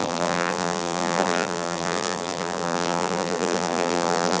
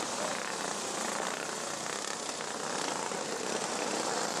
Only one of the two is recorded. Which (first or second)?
second